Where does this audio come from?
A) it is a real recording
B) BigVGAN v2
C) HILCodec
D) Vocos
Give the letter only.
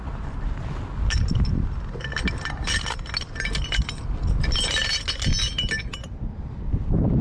A